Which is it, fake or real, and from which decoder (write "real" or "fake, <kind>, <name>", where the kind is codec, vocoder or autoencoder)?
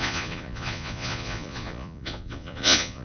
fake, vocoder, Vocos